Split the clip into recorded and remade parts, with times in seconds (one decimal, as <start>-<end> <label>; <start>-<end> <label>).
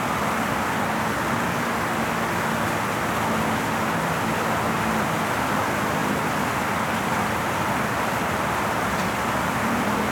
0.0-10.1 recorded